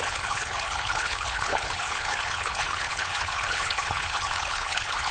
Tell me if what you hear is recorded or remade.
remade